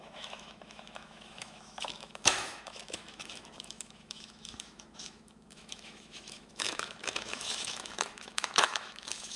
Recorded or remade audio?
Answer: remade